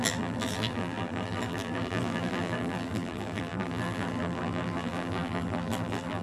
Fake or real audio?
fake